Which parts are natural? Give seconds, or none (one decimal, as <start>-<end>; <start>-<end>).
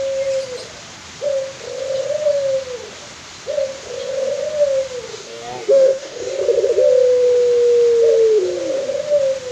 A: 0.0-5.1; 6.4-9.5